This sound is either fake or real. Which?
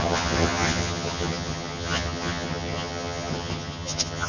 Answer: fake